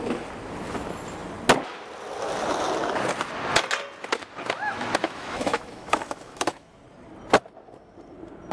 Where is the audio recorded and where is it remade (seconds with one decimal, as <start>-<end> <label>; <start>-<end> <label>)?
0.0-5.0 recorded; 5.0-6.8 remade; 6.8-8.5 recorded